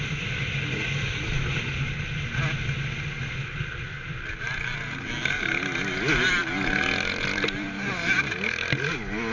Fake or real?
real